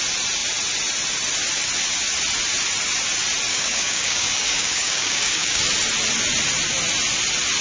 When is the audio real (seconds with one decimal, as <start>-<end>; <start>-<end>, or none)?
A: 0.0-3.5; 5.6-7.6